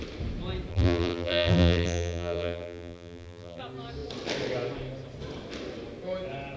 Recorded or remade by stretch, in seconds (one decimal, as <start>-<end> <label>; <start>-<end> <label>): 0.0-0.7 recorded; 0.7-3.6 remade; 3.6-6.6 recorded